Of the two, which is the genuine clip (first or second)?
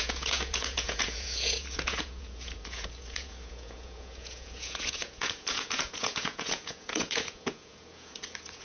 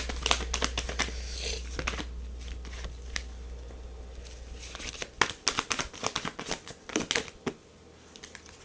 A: second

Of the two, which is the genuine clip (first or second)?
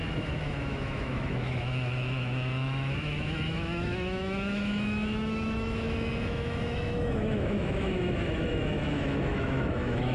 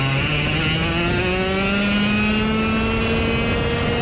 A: second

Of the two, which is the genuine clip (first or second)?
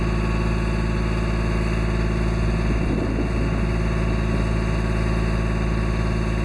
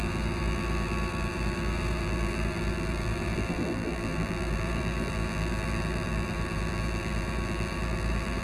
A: first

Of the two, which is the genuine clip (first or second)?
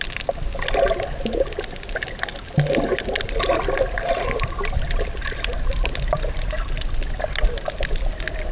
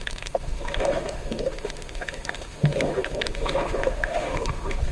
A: first